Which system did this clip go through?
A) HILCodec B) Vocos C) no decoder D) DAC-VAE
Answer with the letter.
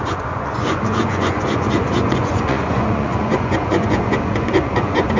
B